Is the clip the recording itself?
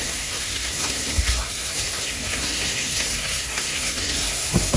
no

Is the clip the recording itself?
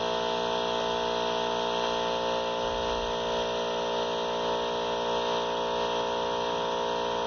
yes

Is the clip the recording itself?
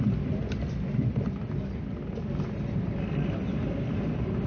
yes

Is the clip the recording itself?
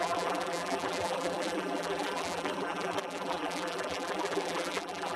no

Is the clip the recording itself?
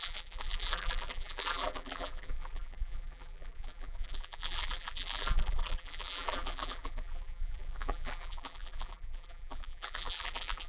no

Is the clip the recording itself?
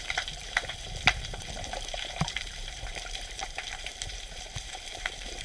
no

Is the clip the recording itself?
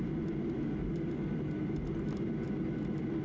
yes